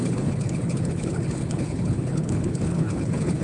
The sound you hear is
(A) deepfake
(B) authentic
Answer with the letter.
A